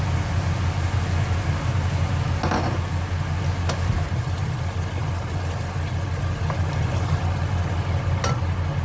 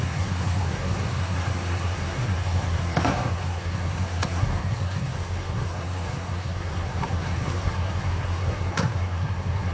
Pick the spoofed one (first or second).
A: second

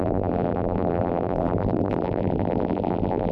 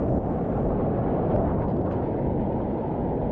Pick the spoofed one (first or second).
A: first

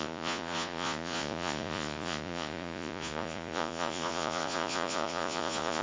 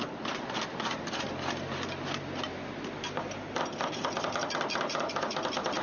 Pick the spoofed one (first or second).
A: first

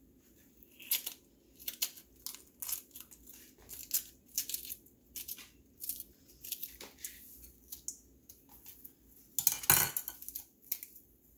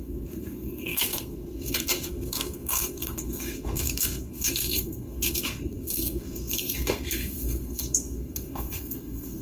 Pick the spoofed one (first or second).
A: second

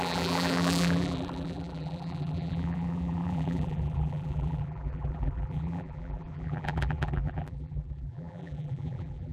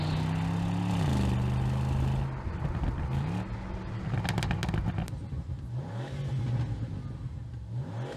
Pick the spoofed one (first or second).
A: first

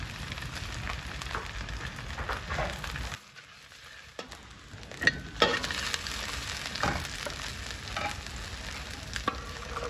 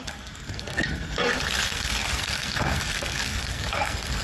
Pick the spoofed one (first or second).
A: second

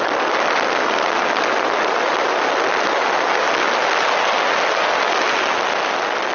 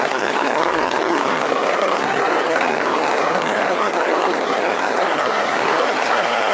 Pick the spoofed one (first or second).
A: second